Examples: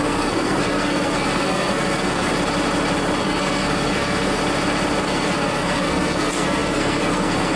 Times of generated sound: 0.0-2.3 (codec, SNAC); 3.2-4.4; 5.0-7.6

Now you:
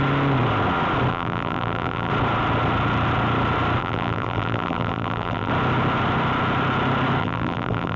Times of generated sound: 1.1-2.1 (vocoder, BigVGAN v2); 3.8-5.5; 7.2-8.0